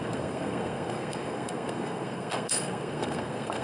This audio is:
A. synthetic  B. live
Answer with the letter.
A